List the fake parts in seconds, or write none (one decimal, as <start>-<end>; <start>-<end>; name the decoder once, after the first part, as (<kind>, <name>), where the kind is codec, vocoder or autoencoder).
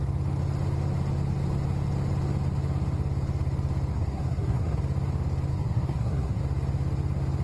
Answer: 3.9-4.8 (codec, SNAC); 5.5-6.4